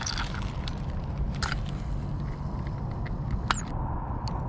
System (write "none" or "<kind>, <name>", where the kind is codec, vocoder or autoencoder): none